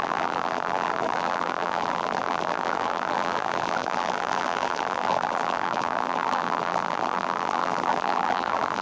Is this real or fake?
fake